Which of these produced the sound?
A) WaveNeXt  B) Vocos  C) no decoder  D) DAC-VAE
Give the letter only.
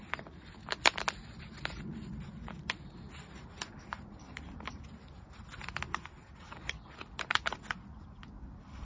C